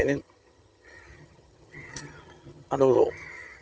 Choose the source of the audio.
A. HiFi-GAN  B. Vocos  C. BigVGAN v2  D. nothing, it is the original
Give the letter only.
A